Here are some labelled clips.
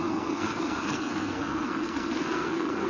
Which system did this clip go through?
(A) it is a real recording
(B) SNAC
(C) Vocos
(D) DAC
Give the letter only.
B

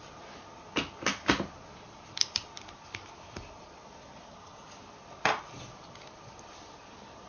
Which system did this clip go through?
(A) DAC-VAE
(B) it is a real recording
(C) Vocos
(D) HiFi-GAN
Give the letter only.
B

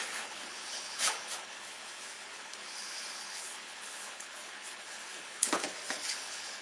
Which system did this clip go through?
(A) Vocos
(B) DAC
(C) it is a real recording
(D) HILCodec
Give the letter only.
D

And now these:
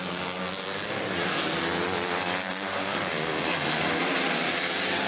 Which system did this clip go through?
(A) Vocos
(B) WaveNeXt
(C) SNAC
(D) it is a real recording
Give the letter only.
D